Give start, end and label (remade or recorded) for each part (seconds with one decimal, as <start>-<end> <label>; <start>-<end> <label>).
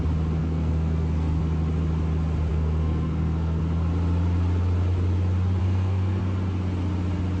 0.0-0.4 recorded; 0.4-1.4 remade; 1.4-2.5 recorded; 2.5-3.6 remade; 3.6-5.6 recorded; 5.6-6.2 remade; 6.2-7.4 recorded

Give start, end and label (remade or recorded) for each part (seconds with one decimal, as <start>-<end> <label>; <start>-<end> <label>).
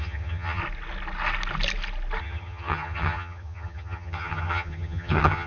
0.0-0.6 remade; 0.6-2.2 recorded; 2.2-5.5 remade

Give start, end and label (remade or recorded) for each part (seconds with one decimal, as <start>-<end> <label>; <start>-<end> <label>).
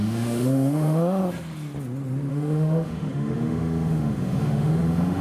0.0-1.2 remade; 1.2-2.3 recorded; 2.3-5.2 remade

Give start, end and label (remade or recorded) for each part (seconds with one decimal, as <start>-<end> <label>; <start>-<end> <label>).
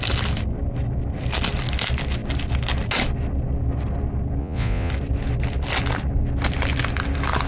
0.0-4.4 recorded; 4.4-4.9 remade; 4.9-7.5 recorded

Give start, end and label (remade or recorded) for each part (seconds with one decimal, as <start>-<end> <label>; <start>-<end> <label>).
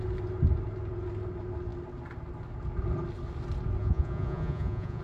0.0-3.8 recorded; 3.8-5.0 remade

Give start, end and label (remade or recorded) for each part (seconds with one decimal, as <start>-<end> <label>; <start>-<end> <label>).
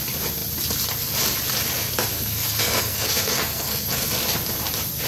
0.0-2.1 recorded; 2.1-4.2 remade; 4.2-5.1 recorded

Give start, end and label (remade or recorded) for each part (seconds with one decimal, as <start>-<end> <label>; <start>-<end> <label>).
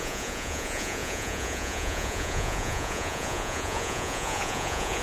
0.0-5.0 remade